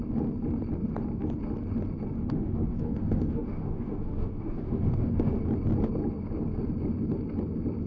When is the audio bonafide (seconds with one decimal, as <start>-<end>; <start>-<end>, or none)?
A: 0.0-2.2; 5.4-7.9